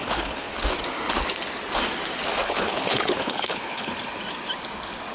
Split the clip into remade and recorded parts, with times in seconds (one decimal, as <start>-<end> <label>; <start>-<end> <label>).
0.0-0.5 remade; 0.5-2.4 recorded; 2.4-3.9 remade; 3.9-5.1 recorded